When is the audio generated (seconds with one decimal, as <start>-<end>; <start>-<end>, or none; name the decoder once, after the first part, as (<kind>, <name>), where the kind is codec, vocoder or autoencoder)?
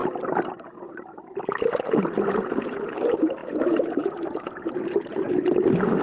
3.4-5.2 (vocoder, BigVGAN v2)